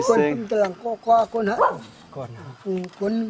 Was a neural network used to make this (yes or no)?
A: no